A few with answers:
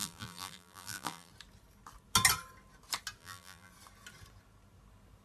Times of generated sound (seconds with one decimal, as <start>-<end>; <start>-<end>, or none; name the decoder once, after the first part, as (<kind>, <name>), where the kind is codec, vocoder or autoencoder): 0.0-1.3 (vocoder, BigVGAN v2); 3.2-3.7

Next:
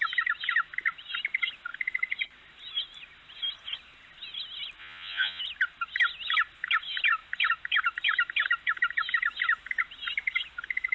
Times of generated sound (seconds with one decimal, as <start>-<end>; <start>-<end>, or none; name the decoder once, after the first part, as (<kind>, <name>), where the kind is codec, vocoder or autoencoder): 4.8-5.4 (vocoder, Vocos)

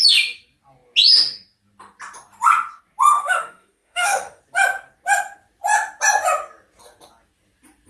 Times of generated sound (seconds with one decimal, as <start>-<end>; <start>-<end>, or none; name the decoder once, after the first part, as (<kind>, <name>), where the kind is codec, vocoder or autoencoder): 3.2-4.4 (autoencoder, DAC-VAE)

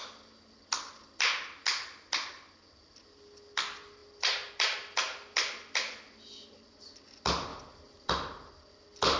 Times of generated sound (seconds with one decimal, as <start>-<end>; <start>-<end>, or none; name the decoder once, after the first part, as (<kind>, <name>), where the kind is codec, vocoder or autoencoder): none

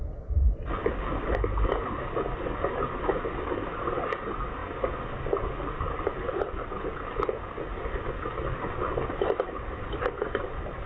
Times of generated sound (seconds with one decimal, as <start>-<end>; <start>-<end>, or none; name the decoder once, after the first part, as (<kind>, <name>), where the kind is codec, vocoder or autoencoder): none

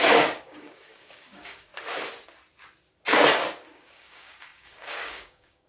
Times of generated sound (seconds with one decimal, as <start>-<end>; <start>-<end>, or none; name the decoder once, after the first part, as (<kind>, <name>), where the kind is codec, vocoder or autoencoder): 0.0-1.7 (codec, DAC); 3.7-5.7

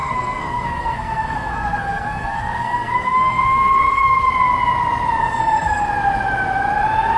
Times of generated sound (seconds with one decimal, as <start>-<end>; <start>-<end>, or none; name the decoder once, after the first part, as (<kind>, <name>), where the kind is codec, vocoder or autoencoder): 0.0-4.3 (codec, SNAC); 5.2-5.8

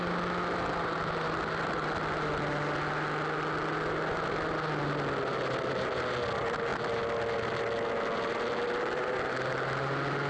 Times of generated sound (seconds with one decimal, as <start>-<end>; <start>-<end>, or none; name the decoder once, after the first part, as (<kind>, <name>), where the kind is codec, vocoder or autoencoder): none